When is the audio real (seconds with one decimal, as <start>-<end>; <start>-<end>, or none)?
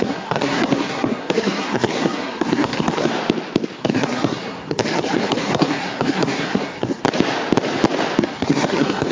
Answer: 3.1-3.8; 7.0-8.2